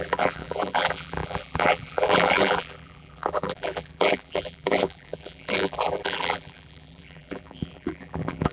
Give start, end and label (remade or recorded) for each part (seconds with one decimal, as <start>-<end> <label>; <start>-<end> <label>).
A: 0.0-8.5 remade